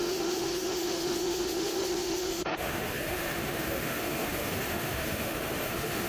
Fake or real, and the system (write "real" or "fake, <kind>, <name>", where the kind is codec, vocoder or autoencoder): fake, autoencoder, DAC-VAE